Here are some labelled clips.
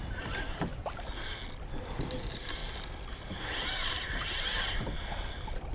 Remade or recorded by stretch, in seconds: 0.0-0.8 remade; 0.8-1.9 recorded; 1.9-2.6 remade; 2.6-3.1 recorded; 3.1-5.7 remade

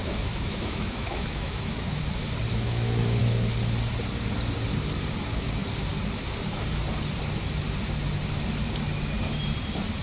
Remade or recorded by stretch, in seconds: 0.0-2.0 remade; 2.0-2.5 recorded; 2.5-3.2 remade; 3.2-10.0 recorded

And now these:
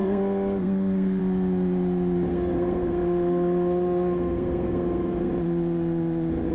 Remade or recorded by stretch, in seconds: 0.0-1.2 remade; 1.2-2.3 recorded; 2.3-5.3 remade; 5.3-6.5 recorded

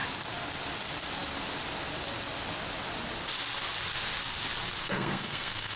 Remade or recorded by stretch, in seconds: 0.0-4.8 recorded; 4.8-5.8 remade

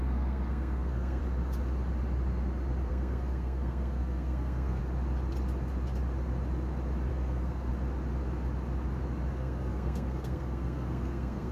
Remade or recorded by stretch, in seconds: 0.0-1.2 remade; 1.2-2.9 recorded; 2.9-4.8 remade; 4.8-7.1 recorded; 7.1-7.7 remade; 7.7-9.3 recorded; 9.3-11.5 remade

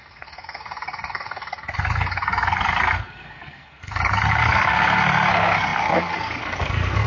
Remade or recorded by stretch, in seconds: 0.0-7.1 remade

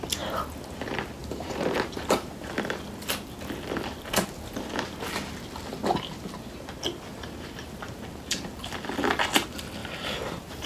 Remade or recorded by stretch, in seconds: 0.0-1.2 recorded; 1.2-2.5 remade; 2.5-9.8 recorded; 9.8-10.7 remade